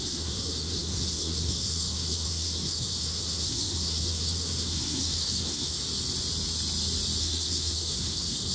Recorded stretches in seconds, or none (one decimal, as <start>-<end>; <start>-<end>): 5.8-7.2